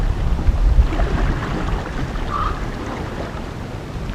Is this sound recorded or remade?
recorded